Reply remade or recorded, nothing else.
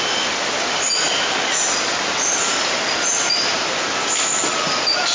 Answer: recorded